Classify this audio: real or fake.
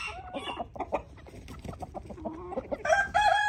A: fake